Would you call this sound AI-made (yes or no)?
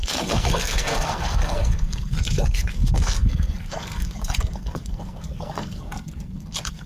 yes